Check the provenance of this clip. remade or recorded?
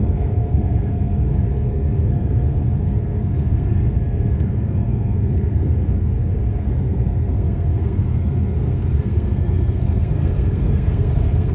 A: remade